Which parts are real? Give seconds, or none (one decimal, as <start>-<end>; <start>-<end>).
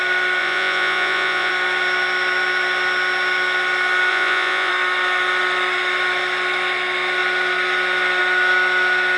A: 0.0-0.4; 1.5-4.1; 4.7-9.2